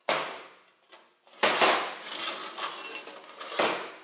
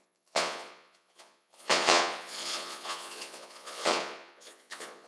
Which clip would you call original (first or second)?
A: first